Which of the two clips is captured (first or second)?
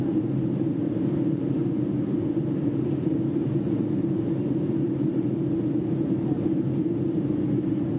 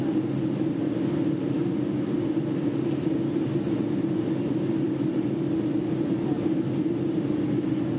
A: second